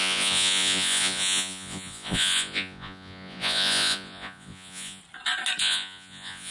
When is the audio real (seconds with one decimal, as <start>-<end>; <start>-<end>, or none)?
5.0-5.6